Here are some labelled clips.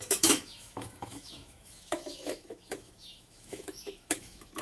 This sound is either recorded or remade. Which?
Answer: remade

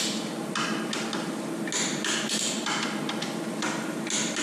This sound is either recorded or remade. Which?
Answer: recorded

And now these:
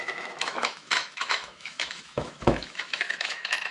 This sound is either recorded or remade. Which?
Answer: remade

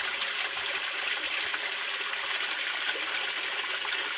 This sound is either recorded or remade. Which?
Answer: recorded